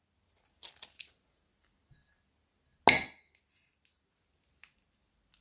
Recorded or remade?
recorded